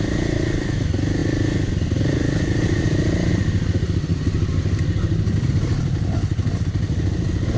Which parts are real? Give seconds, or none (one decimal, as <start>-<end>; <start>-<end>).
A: 0.0-7.6

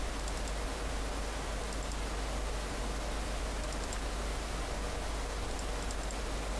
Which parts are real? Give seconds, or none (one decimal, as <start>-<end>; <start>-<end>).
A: 0.0-6.6

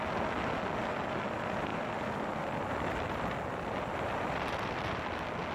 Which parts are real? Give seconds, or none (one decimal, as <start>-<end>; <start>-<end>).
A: 0.0-1.7; 5.0-5.5

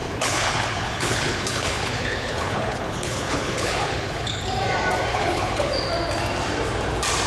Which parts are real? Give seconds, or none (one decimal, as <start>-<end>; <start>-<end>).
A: 4.4-5.1; 5.7-7.3

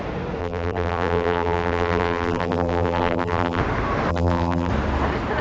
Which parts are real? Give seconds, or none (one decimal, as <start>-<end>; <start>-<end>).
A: 0.0-0.4; 3.6-4.1; 4.7-5.4

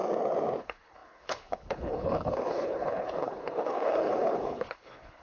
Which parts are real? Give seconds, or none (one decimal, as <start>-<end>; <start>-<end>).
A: 0.0-0.6

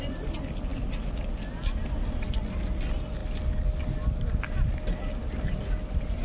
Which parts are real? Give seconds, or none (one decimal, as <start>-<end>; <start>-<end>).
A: 0.0-6.2